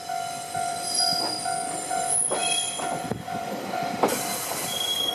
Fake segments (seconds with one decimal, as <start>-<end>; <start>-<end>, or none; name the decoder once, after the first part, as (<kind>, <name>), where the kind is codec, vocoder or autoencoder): 0.0-5.1 (vocoder, BigVGAN v2)